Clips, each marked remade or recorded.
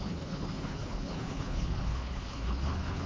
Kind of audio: remade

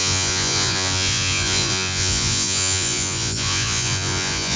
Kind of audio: remade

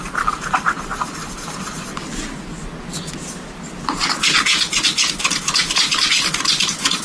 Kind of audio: recorded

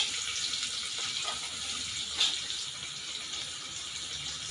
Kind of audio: recorded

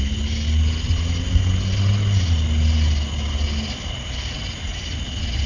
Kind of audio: recorded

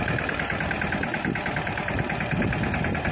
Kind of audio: recorded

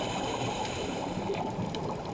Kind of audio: remade